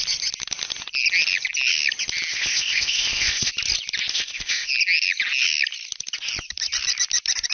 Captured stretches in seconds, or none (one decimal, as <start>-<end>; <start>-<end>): 0.0-2.3; 3.5-4.1; 4.7-7.5